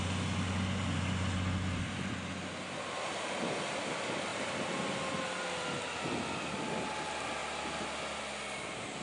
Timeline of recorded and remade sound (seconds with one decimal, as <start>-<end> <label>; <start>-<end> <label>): 0.0-4.3 recorded; 4.3-5.0 remade; 5.0-9.0 recorded